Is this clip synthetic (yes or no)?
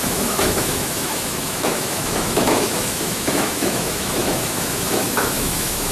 yes